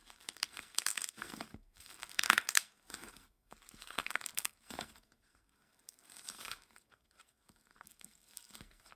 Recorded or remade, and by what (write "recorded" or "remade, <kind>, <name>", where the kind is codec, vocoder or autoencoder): remade, codec, SNAC